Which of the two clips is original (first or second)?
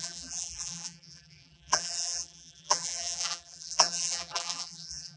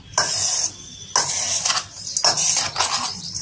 second